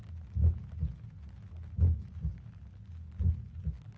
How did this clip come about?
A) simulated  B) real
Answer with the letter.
B